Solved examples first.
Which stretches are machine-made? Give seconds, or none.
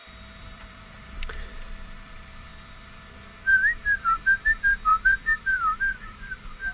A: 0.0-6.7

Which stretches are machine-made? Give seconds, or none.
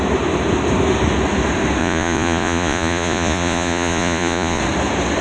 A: 1.8-4.6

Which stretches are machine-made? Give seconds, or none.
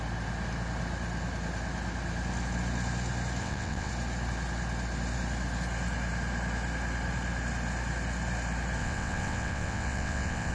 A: 3.4-3.9; 8.8-10.5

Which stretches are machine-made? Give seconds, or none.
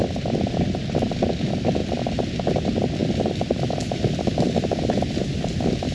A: none